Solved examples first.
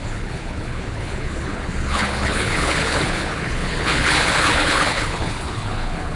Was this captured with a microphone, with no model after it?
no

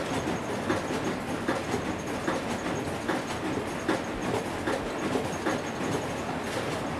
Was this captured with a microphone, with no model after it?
yes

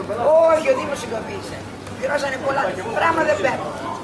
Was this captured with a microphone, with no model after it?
yes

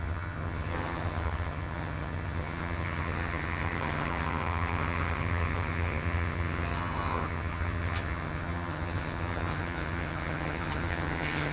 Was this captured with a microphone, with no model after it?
no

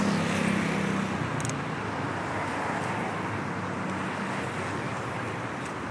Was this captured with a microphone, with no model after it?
yes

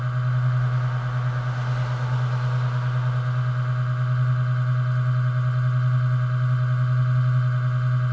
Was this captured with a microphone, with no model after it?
yes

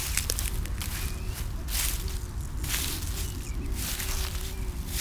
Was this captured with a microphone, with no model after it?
yes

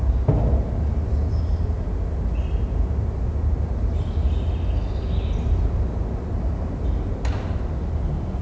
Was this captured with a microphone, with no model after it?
yes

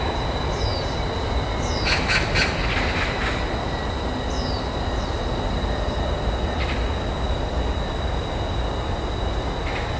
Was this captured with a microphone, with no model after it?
yes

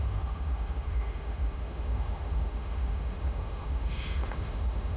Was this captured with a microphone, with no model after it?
no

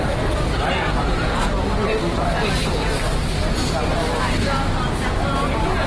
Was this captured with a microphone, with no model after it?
yes